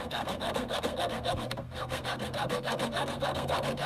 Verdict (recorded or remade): remade